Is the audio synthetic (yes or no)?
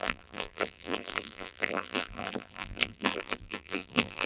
yes